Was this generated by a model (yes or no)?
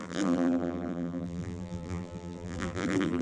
yes